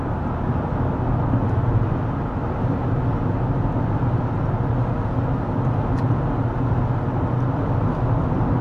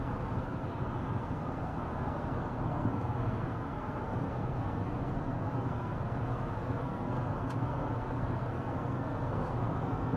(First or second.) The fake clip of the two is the second